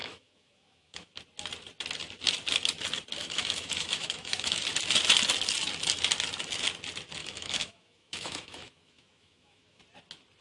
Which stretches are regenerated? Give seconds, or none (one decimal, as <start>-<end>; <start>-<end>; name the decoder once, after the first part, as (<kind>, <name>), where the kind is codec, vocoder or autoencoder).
0.0-1.2 (autoencoder, DAC-VAE); 3.2-4.6; 7.2-9.8